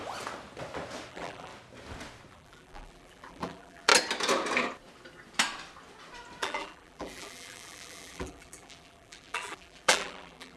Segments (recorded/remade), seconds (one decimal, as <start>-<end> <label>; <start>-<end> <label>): 0.0-1.1 recorded; 1.1-1.5 remade; 1.5-2.3 recorded; 2.3-3.9 remade; 3.9-6.4 recorded; 6.4-10.6 remade